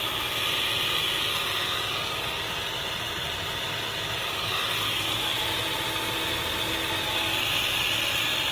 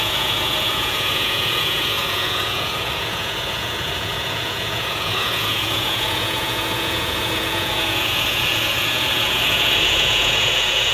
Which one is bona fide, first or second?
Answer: first